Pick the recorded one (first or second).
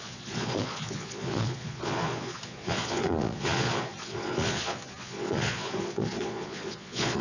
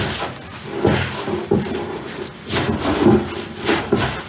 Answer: second